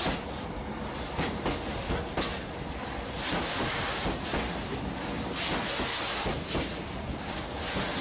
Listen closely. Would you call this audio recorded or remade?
recorded